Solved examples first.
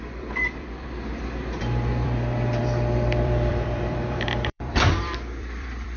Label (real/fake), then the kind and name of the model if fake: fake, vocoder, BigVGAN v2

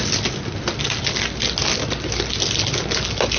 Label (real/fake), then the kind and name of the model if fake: real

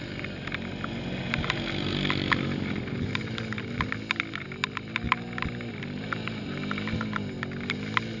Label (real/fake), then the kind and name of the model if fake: real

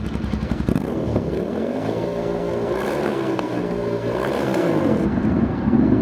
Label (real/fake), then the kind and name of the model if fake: fake, codec, SNAC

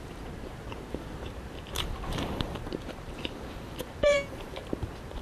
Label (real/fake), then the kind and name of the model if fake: fake, vocoder, BigVGAN v2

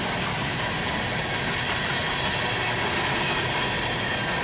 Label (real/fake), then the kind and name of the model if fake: real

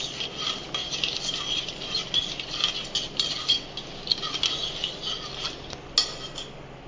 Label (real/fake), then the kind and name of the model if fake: real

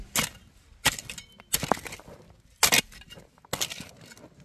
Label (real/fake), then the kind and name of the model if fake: real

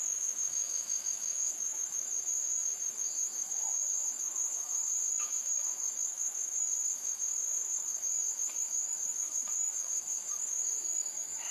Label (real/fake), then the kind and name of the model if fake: fake, autoencoder, DAC-VAE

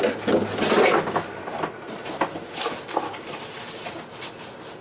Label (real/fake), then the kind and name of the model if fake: real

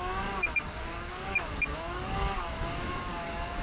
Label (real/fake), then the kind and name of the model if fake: fake, codec, DAC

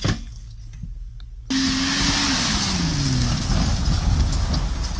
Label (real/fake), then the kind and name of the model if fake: real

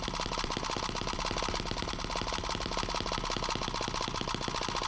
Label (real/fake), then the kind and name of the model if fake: real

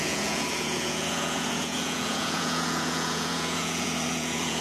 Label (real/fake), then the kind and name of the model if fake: fake, vocoder, Vocos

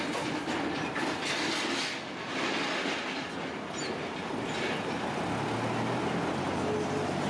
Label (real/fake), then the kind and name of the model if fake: real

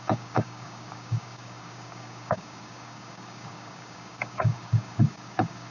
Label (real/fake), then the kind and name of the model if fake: fake, codec, DAC